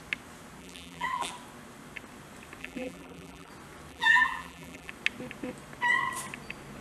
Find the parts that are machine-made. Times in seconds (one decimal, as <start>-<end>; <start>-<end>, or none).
0.6-1.3; 2.6-3.5; 3.9-4.9